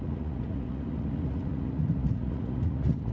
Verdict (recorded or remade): remade